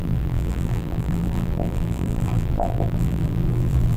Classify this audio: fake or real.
fake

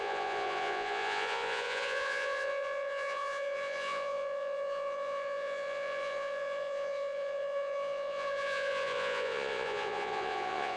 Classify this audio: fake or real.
fake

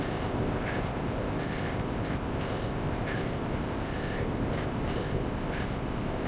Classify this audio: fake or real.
fake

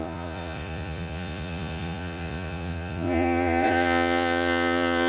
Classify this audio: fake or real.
fake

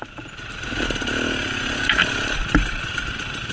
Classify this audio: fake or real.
fake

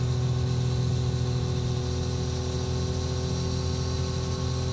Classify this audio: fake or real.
real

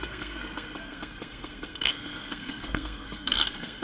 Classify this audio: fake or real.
fake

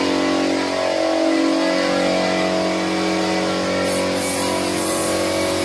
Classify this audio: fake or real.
real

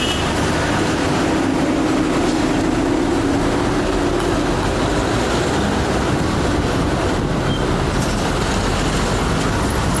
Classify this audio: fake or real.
real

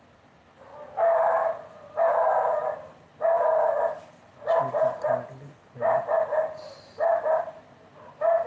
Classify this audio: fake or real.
fake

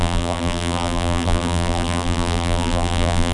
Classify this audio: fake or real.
fake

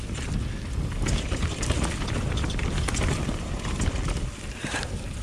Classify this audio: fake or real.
real